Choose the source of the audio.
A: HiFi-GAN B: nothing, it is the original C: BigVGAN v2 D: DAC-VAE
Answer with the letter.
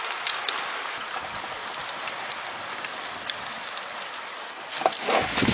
B